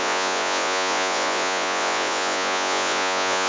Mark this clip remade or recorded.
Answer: remade